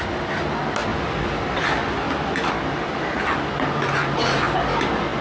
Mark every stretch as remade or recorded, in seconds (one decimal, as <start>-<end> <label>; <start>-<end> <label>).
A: 0.0-5.2 recorded